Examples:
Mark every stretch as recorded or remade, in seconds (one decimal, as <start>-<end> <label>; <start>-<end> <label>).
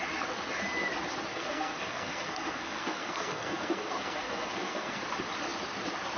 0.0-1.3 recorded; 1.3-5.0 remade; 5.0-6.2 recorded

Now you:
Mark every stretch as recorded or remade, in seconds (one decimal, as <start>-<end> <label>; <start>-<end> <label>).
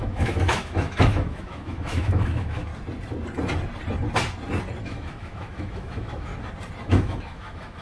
0.0-2.7 remade; 2.7-4.8 recorded; 4.8-6.3 remade; 6.3-6.9 recorded; 6.9-7.8 remade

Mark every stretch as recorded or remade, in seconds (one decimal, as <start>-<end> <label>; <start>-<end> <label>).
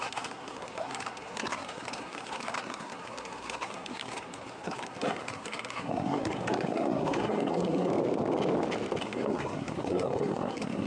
0.0-7.9 remade; 7.9-9.0 recorded; 9.0-10.9 remade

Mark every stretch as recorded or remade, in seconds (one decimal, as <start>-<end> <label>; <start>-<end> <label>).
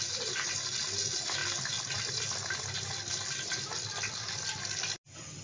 0.0-5.4 recorded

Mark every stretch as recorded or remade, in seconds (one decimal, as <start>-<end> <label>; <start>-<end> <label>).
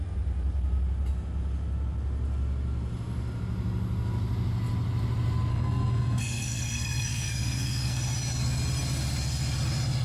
0.0-5.5 recorded; 5.5-8.0 remade; 8.0-10.0 recorded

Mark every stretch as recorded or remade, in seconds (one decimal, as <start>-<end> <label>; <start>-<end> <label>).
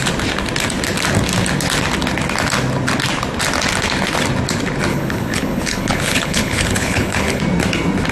0.0-4.9 recorded; 4.9-7.4 remade; 7.4-8.1 recorded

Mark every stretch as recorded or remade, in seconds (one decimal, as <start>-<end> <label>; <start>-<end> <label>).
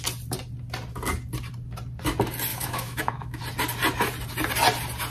0.0-2.5 recorded; 2.5-3.4 remade; 3.4-5.1 recorded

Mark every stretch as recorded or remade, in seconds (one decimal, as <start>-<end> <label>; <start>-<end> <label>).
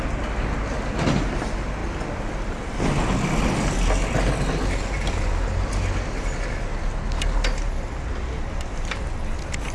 0.0-9.7 recorded